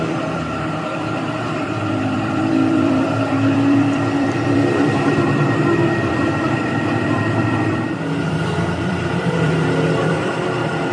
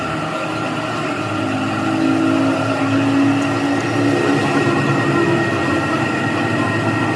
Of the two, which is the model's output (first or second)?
first